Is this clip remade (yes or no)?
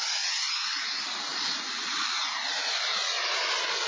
no